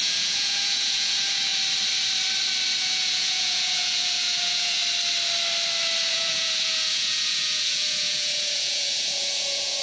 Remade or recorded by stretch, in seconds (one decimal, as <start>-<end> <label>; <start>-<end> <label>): 0.0-1.5 remade; 1.5-2.8 recorded; 2.8-4.8 remade; 4.8-6.1 recorded; 6.1-9.8 remade